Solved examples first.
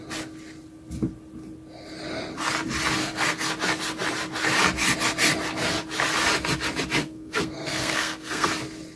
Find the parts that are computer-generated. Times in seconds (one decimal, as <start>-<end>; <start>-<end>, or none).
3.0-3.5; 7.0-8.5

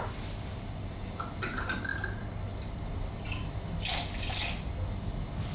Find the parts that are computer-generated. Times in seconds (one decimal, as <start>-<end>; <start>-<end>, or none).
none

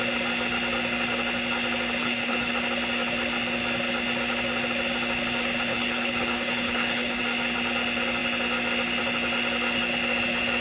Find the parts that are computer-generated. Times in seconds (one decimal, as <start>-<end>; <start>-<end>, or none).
2.0-2.5; 5.7-7.2

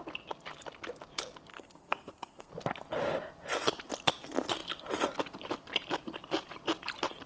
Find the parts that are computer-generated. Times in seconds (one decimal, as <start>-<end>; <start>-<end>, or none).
1.5-2.5

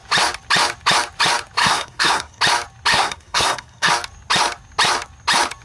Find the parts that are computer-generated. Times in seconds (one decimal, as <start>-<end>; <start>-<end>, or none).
1.6-2.4; 2.9-3.9

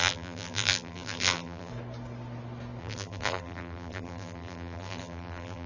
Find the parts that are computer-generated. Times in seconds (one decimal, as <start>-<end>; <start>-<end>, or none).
0.0-1.7; 2.8-5.7